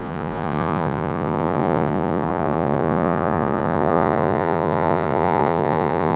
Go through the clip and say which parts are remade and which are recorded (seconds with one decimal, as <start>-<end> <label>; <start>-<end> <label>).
0.0-6.2 remade

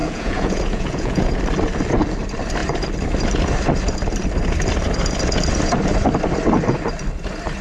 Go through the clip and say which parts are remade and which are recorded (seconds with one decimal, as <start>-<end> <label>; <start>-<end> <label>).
0.0-1.4 remade; 1.4-7.6 recorded

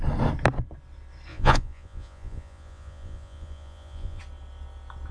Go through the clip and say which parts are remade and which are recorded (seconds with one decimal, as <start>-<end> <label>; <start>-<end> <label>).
0.0-1.3 recorded; 1.3-4.2 remade; 4.2-5.1 recorded

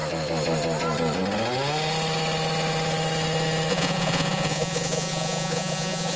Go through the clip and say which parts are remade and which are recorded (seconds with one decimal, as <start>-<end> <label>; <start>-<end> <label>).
0.0-3.7 recorded; 3.7-6.2 remade